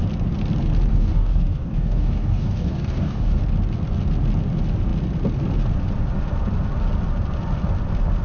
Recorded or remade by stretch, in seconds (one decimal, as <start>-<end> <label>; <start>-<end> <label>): 0.0-0.9 recorded; 0.9-3.4 remade; 3.4-8.2 recorded